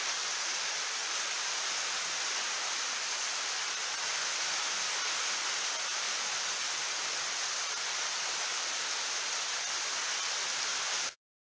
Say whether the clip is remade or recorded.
recorded